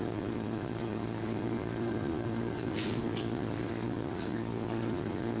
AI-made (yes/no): yes